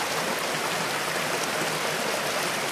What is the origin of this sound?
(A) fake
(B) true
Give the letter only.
B